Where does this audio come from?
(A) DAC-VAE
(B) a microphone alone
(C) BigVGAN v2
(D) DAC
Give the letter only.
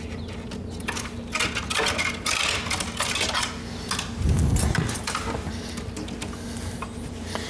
B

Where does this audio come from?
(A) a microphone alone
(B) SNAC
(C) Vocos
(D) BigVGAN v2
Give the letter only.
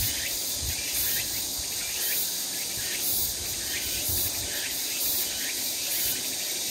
A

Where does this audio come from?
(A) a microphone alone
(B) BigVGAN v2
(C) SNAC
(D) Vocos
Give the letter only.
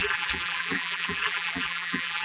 B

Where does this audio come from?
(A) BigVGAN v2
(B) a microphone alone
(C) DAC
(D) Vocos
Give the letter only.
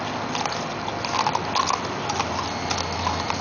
B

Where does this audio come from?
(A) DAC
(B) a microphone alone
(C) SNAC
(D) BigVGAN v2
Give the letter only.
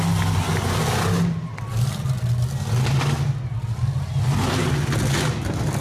B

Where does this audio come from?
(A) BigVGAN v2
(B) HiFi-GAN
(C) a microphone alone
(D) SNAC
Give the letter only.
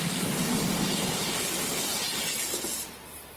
A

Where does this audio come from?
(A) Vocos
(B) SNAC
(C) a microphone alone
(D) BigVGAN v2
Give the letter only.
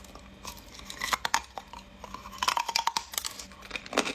C